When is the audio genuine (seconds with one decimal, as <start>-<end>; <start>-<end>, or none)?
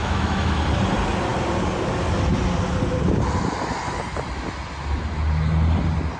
0.6-6.2